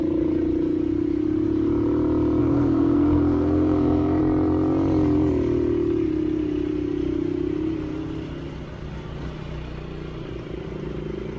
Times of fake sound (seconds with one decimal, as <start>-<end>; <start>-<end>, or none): 2.4-4.2